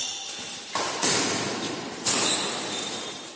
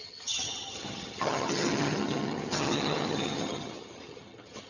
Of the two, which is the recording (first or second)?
first